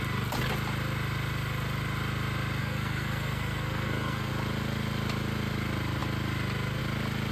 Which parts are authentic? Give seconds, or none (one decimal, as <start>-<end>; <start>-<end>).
0.0-2.6; 4.3-7.3